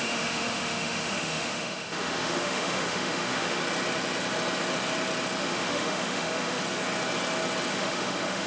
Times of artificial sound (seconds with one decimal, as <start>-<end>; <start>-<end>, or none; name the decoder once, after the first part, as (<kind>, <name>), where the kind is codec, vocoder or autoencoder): 0.0-3.6 (autoencoder, DAC-VAE); 5.4-6.6; 7.7-8.5